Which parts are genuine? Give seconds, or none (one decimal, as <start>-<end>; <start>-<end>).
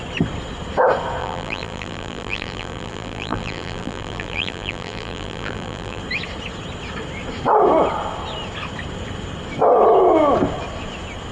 0.0-1.2; 6.0-11.3